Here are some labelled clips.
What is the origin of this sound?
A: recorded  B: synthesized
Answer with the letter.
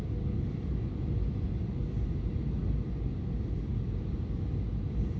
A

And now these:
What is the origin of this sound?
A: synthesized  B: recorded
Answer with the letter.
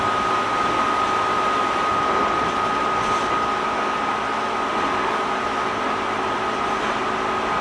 B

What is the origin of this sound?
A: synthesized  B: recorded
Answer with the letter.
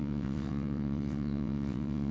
A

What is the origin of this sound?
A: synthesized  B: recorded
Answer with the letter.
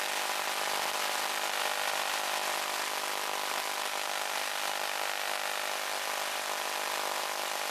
A